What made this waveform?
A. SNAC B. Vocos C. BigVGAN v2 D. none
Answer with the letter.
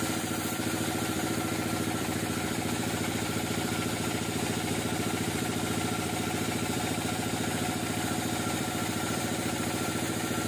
C